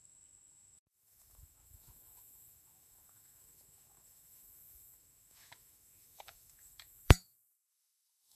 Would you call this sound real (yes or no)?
no